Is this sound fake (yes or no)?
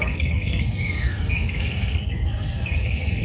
yes